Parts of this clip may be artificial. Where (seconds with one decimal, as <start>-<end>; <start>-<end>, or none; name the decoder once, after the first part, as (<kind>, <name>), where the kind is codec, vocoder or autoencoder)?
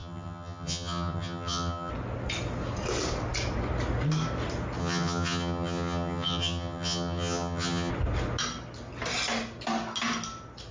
0.0-1.9 (vocoder, HiFi-GAN); 4.8-7.9